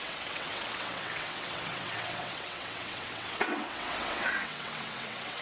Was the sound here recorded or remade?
remade